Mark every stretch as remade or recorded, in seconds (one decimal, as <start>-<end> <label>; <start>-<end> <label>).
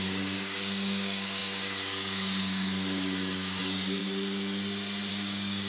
0.0-4.0 remade; 4.0-5.1 recorded; 5.1-5.7 remade